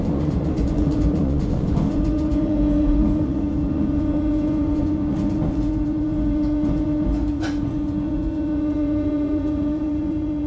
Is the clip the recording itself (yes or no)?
no